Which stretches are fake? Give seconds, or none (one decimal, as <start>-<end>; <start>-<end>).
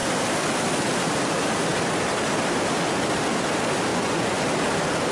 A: 3.9-4.4